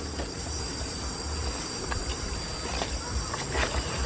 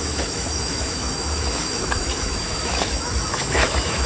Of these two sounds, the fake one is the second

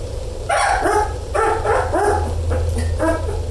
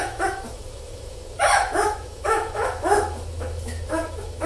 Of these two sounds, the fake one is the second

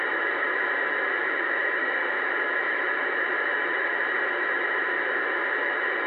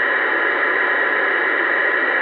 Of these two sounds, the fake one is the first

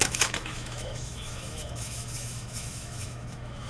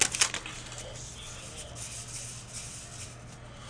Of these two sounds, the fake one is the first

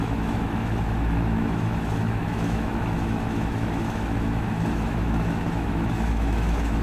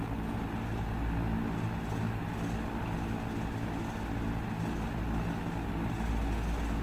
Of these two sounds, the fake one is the first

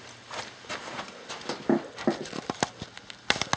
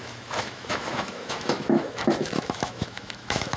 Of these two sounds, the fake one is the second